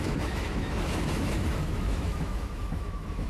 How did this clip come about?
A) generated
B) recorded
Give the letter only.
A